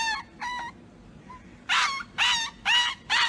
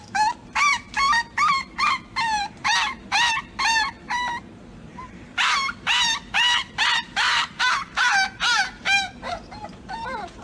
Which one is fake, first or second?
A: second